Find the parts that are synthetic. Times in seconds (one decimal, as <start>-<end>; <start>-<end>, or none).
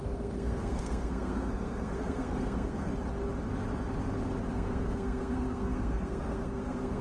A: 0.0-2.9; 4.5-7.0